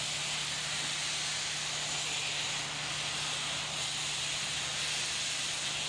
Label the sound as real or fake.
real